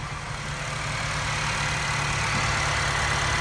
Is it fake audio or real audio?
real